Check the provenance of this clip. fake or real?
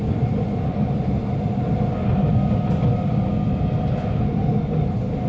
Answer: real